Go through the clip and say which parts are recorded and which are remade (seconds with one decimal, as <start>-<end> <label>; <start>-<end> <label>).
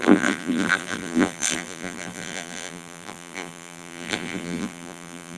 0.0-5.4 remade